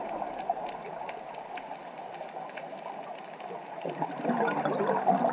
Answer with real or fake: real